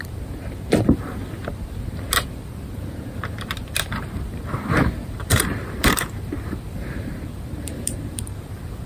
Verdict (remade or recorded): remade